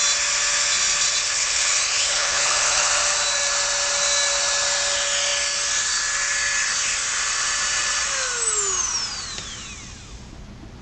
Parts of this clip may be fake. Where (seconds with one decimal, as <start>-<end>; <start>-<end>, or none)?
1.2-2.9